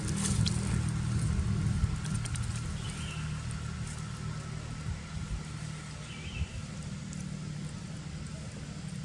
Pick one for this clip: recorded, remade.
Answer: recorded